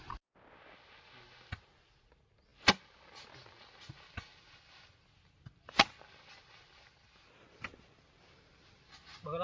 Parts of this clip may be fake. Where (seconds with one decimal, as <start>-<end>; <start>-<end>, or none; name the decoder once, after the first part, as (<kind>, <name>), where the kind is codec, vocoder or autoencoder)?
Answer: none